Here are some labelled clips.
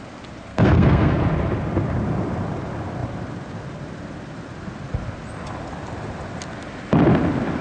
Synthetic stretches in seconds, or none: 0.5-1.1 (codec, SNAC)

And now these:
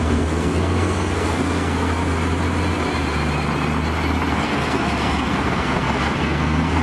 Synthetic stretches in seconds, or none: 0.0-2.0 (codec, SNAC); 4.3-6.8

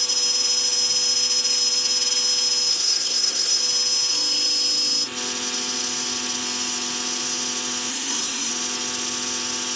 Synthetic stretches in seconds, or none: 2.7-3.6 (codec, SNAC); 7.9-8.5

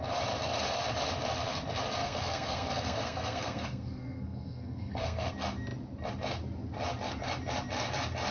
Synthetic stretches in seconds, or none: 2.0-5.3 (codec, SNAC)